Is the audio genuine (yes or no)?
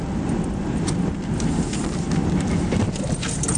yes